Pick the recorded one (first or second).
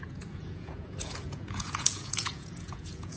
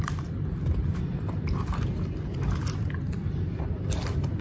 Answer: second